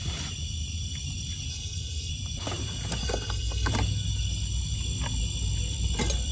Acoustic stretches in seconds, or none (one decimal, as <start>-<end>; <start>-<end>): 0.0-1.5; 2.1-3.0; 3.7-6.3